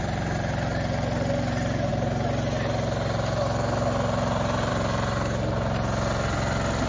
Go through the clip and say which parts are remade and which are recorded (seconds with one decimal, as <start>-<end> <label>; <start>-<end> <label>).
0.0-6.9 recorded